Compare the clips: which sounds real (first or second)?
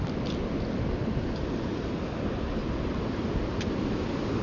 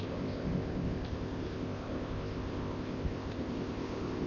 first